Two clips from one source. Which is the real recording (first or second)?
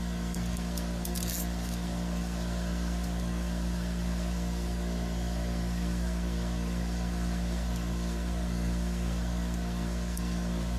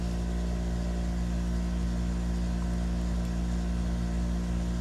second